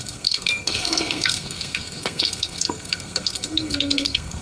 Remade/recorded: remade